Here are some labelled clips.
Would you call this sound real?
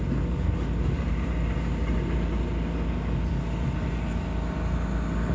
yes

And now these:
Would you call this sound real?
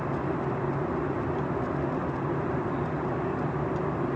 yes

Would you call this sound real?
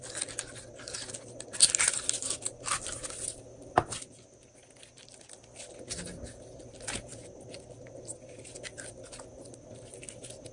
yes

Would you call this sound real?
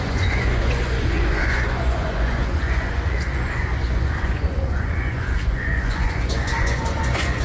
no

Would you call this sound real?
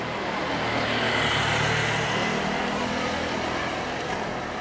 yes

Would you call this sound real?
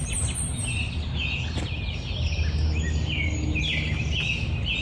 yes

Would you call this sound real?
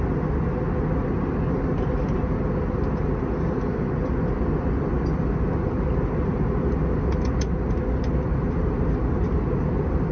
yes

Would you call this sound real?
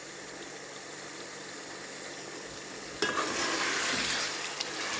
yes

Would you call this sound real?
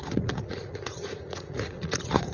no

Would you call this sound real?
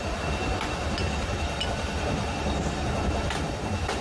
yes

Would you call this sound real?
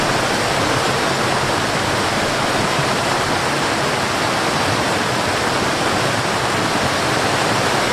yes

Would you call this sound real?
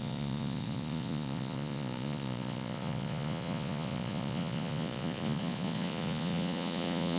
no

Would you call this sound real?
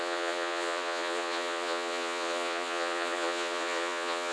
no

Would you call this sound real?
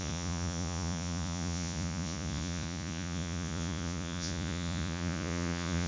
no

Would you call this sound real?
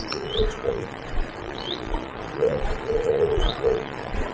no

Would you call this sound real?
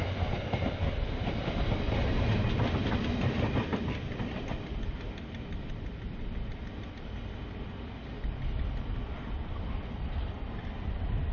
yes